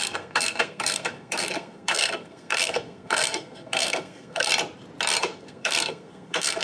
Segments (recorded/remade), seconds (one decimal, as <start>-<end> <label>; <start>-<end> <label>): 0.0-4.5 remade; 4.5-5.2 recorded; 5.2-6.6 remade